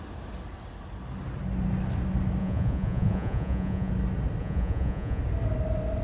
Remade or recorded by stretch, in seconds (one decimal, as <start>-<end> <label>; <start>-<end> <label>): 0.0-2.4 recorded; 2.4-3.9 remade; 3.9-4.4 recorded; 4.4-5.2 remade; 5.2-6.0 recorded